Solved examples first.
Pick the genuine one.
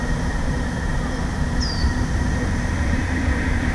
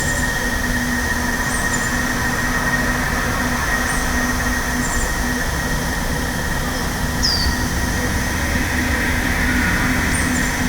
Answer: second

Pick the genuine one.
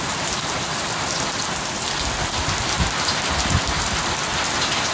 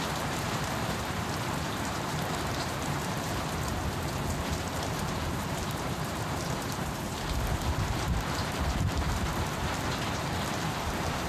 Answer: first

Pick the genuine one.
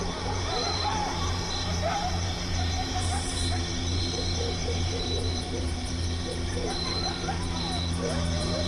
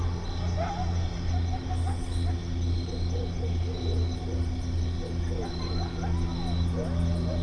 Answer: second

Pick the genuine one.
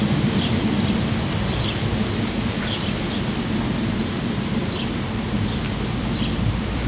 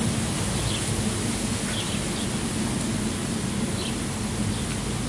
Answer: second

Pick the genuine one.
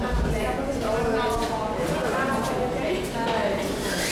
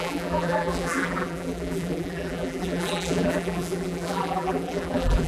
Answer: first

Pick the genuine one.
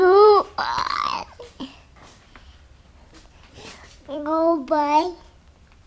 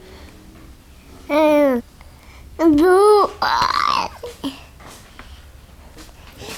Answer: second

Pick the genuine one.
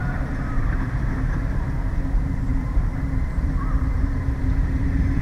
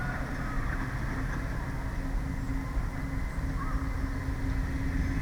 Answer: second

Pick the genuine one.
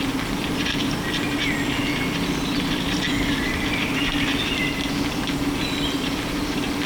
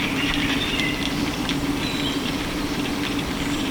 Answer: first